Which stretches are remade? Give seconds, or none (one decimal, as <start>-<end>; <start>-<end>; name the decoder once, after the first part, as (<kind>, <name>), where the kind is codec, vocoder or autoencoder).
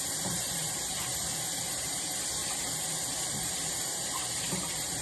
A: 0.0-1.2 (vocoder, BigVGAN v2); 1.7-2.4; 3.1-5.0